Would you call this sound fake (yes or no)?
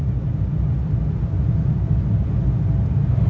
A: no